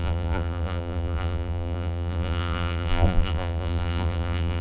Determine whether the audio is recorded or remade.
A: remade